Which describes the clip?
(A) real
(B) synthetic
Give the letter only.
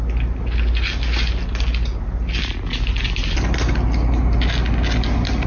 A